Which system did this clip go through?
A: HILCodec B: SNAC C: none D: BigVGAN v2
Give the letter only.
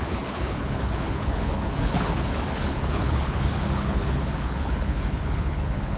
A